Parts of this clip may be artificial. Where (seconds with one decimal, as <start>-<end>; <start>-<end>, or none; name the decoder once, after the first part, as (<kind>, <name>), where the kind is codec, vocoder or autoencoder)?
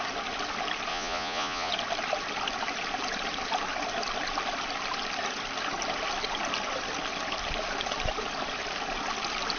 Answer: 0.9-1.7 (vocoder, Vocos)